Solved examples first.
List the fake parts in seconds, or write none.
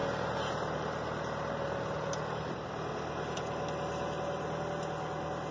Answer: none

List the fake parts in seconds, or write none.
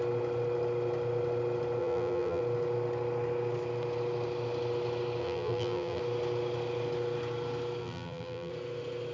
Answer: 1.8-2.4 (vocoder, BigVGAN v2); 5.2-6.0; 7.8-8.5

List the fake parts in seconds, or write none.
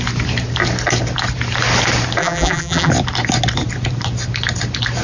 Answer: 2.2-2.9 (vocoder, BigVGAN v2)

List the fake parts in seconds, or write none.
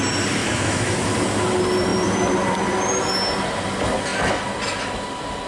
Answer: 0.4-0.9 (autoencoder, DAC-VAE)